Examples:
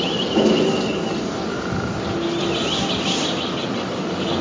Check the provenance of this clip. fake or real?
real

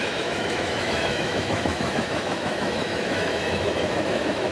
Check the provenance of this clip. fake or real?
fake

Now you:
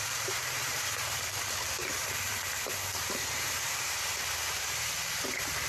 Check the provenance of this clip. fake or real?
fake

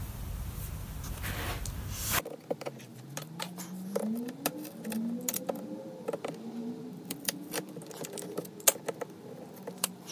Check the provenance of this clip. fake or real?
real